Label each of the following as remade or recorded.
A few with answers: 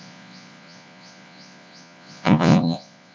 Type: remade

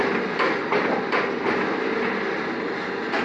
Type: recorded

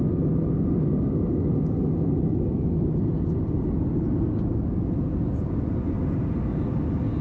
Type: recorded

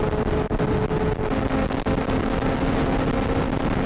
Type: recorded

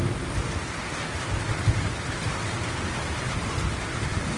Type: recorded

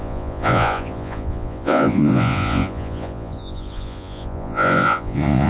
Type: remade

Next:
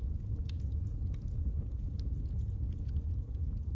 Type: remade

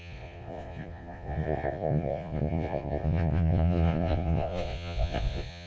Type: remade